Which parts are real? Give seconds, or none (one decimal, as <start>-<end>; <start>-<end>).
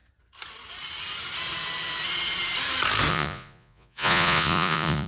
0.0-3.1